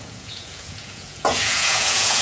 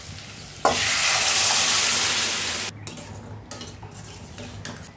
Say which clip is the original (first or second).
second